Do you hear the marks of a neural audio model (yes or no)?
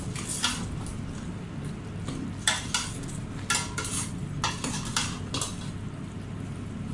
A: no